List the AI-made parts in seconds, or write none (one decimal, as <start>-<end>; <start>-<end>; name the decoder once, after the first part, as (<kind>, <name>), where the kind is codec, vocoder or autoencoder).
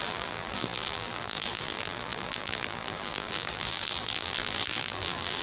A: 0.0-5.4 (vocoder, BigVGAN v2)